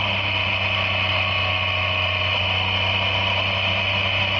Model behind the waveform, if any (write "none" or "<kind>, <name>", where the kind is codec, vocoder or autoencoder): none